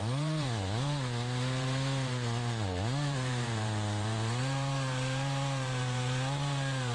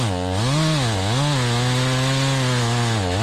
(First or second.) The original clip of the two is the second